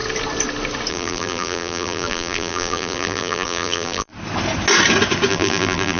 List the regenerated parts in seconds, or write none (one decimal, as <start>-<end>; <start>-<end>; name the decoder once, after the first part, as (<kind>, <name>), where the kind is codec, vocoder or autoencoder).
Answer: 0.9-4.1 (vocoder, BigVGAN v2); 5.3-6.0